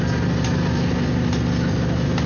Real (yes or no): yes